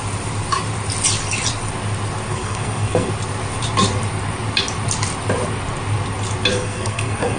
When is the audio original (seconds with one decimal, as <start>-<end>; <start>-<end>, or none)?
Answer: 0.0-2.3; 3.1-6.5